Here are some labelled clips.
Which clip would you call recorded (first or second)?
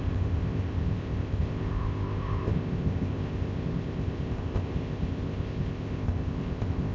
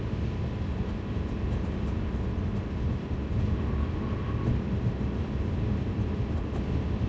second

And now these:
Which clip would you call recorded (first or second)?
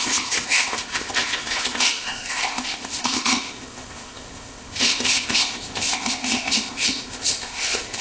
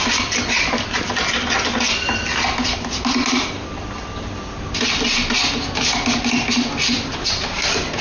second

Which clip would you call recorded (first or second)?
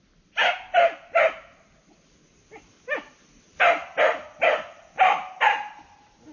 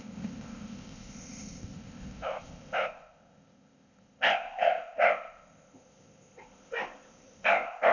first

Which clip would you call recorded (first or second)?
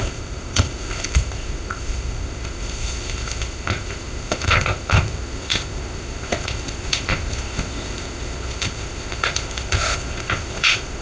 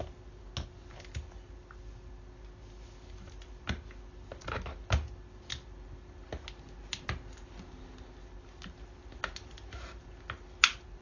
second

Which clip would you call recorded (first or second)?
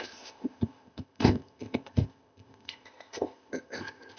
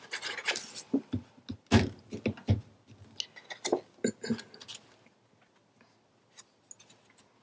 second